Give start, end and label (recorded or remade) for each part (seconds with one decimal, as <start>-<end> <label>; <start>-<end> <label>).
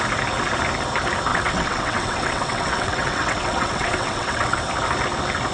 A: 0.0-1.3 recorded; 1.3-4.6 remade; 4.6-5.5 recorded